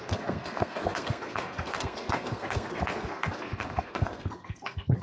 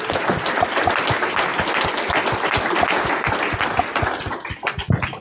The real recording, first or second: second